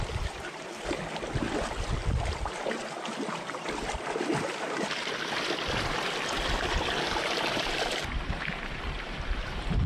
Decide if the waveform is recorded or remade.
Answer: remade